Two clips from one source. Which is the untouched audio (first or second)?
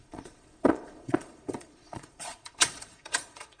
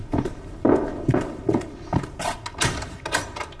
second